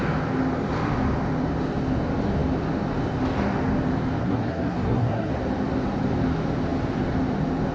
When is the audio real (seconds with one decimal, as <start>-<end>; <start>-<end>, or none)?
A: 0.0-4.2; 5.3-7.7

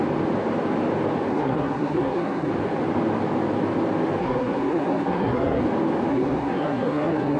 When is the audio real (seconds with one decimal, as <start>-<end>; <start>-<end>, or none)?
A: 0.0-1.3; 2.5-4.2; 5.6-6.1